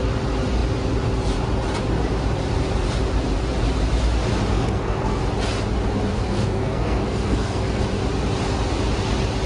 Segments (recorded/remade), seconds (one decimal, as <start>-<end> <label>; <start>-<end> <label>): 0.0-4.5 recorded; 4.5-5.2 remade; 5.2-6.1 recorded; 6.1-7.8 remade; 7.8-9.5 recorded